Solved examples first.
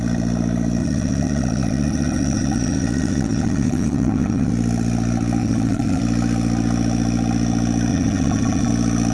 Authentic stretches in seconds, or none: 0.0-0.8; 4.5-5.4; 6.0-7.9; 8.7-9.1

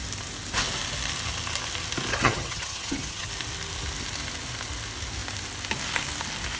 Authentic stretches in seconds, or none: 0.0-2.1; 3.3-6.6

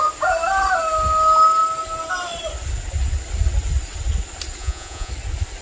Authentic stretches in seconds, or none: 0.0-4.6; 5.1-5.6

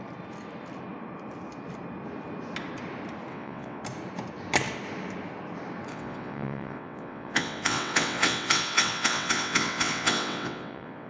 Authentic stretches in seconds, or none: 0.0-3.3; 3.8-5.9

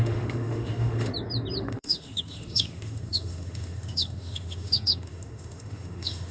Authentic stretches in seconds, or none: 1.1-1.6

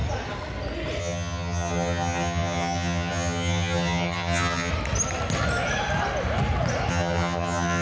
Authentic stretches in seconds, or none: 0.0-1.0; 4.7-6.9

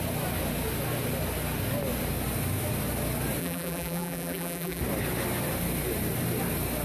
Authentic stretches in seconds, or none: 0.0-3.4; 4.8-6.8

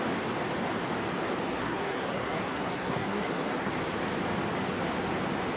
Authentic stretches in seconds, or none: 0.0-1.5; 3.7-5.6